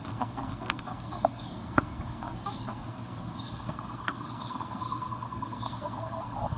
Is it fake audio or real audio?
fake